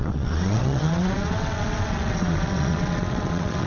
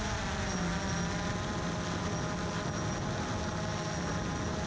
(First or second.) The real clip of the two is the second